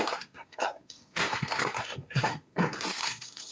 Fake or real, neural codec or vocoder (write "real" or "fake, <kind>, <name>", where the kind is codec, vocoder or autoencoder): fake, codec, SNAC